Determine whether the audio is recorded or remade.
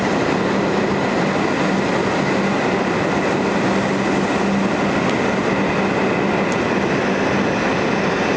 recorded